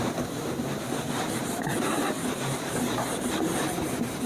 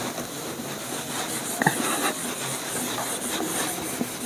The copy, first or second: first